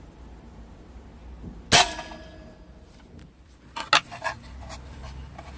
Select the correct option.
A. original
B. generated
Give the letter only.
A